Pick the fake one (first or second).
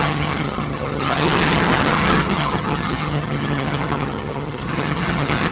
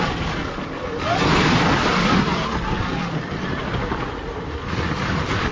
first